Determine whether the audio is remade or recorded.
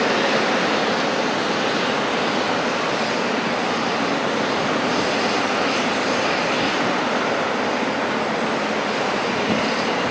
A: recorded